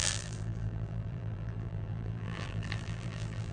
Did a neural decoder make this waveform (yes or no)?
yes